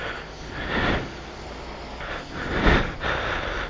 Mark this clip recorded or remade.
recorded